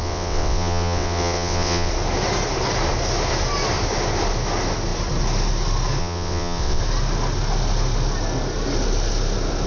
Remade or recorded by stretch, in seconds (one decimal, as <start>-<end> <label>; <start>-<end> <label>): 0.0-1.9 remade; 1.9-6.0 recorded; 6.0-6.8 remade; 6.8-9.7 recorded